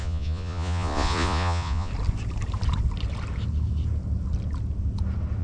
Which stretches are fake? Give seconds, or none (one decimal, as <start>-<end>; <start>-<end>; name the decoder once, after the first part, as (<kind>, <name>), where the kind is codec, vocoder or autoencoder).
0.0-1.9 (vocoder, Vocos)